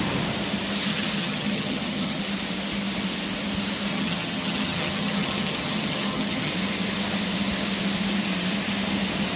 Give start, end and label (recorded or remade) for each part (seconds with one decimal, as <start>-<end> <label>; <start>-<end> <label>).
0.0-0.9 recorded; 0.9-2.2 remade; 2.2-3.9 recorded; 3.9-6.5 remade; 6.5-9.4 recorded